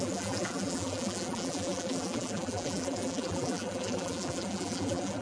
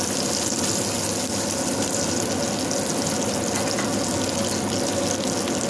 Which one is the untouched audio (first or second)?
second